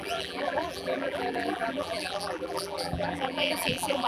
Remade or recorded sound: remade